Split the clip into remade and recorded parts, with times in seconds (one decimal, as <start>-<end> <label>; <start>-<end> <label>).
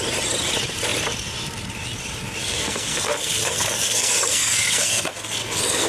0.0-2.4 recorded; 2.4-5.9 remade